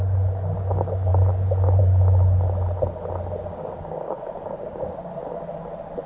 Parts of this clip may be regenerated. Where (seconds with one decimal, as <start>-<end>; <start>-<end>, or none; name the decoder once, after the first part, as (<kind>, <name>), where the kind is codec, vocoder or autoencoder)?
3.5-5.1 (codec, DAC)